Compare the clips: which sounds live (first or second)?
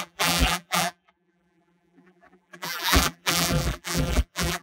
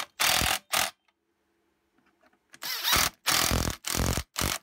second